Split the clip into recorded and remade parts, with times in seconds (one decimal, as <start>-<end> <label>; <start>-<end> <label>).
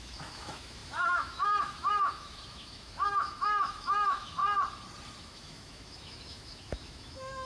0.0-4.4 remade; 4.4-5.2 recorded; 5.2-7.5 remade